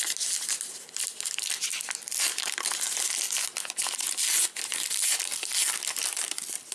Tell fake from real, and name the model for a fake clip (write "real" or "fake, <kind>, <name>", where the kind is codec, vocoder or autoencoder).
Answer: real